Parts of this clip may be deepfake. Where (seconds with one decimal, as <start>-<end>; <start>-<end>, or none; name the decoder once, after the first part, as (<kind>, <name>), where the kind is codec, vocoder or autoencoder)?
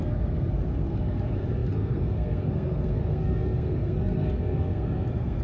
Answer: 0.0-5.4 (codec, SNAC)